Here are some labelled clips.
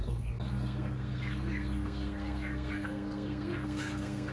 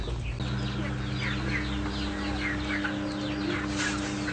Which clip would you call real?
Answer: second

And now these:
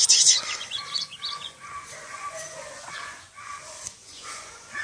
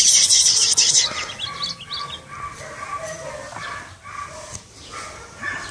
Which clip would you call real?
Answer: second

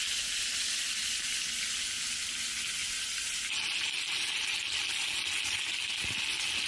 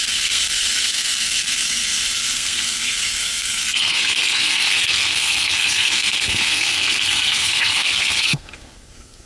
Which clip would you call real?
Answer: first